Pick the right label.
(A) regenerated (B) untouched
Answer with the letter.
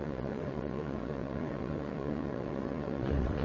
A